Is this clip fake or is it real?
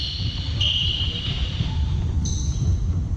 fake